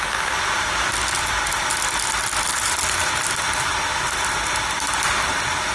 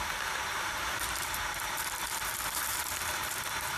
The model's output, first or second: second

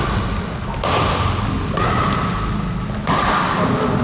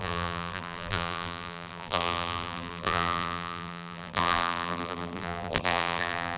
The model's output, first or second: second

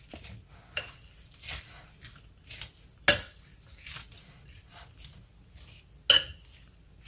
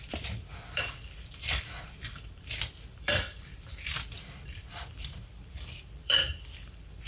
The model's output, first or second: second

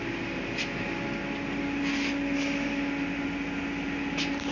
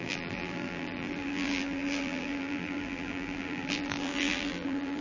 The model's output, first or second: second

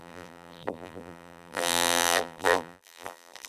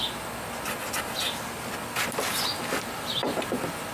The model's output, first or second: first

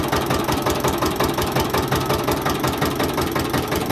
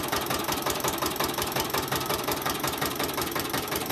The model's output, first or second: second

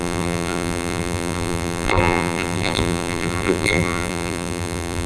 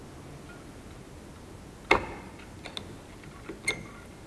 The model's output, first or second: first